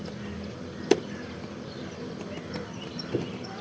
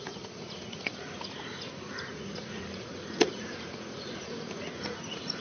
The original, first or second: first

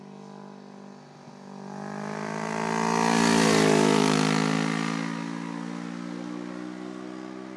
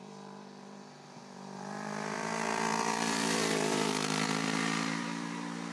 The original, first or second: first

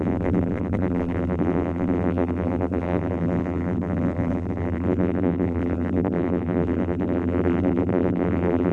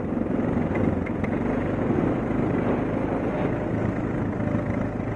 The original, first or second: second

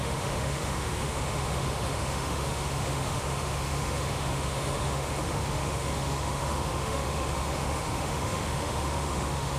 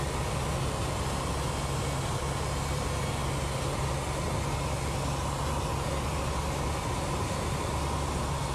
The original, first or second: second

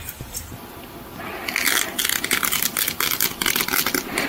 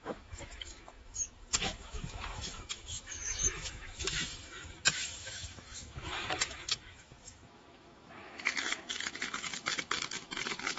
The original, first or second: first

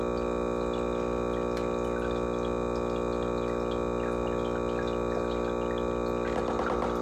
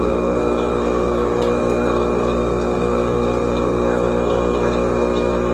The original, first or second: first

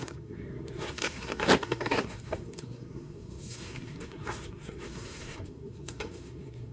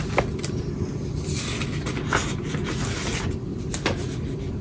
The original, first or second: second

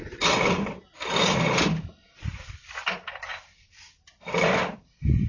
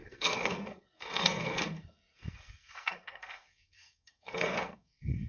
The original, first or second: first